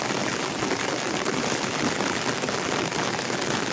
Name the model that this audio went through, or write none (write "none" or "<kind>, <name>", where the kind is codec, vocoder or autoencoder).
none